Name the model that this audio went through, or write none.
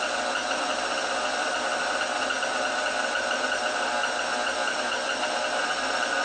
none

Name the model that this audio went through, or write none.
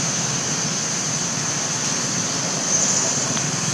vocoder, BigVGAN v2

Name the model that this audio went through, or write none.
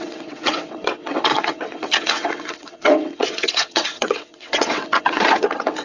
vocoder, WaveNeXt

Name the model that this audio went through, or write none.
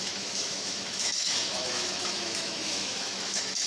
autoencoder, DAC-VAE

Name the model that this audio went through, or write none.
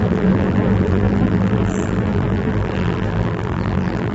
vocoder, BigVGAN v2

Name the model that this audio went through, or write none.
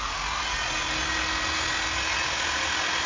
none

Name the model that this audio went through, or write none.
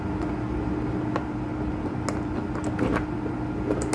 none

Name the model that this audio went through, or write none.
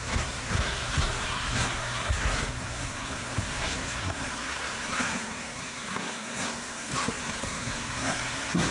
codec, SNAC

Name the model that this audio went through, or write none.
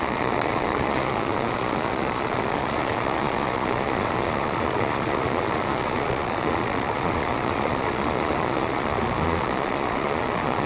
vocoder, Vocos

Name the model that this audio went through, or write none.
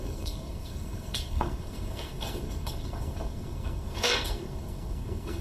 codec, SNAC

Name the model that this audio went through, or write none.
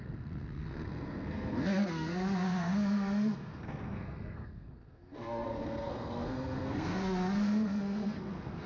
codec, SNAC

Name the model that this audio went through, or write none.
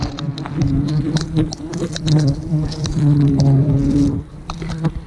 vocoder, BigVGAN v2